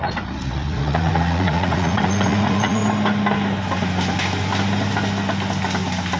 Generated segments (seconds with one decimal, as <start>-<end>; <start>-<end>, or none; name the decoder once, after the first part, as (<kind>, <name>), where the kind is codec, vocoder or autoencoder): 0.0-2.8 (vocoder, Vocos)